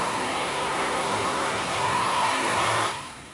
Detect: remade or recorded remade